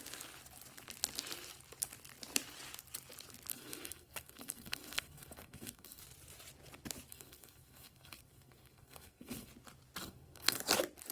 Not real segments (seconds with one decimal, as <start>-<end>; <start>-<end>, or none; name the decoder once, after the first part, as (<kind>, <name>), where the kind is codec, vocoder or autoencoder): 3.5-6.0 (codec, SNAC); 7.1-9.5; 10.0-10.6